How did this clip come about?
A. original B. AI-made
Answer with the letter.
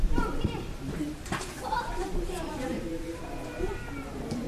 B